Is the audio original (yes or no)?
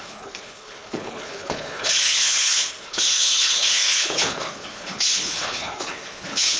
no